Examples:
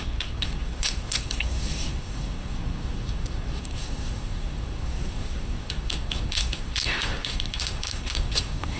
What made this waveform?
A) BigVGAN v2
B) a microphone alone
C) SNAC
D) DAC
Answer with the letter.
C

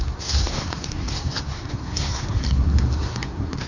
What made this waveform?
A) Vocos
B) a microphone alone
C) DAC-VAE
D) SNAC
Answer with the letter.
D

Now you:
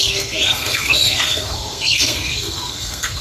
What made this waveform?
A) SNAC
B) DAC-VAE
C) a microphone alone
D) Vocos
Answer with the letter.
A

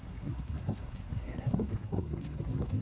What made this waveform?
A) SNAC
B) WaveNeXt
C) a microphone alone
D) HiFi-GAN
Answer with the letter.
A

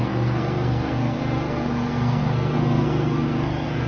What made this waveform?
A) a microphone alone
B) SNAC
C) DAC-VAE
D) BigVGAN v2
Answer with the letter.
B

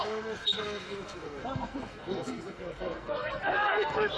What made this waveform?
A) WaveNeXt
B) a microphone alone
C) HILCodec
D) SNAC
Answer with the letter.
D